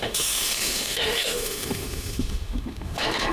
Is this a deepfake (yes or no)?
yes